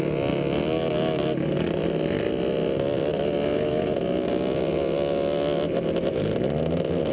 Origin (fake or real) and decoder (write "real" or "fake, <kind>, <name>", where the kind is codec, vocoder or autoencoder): real